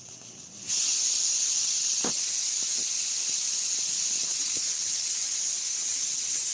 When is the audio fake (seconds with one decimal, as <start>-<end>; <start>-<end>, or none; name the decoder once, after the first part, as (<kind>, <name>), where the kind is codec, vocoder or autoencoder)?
0.0-1.0 (vocoder, WaveNeXt); 4.2-6.5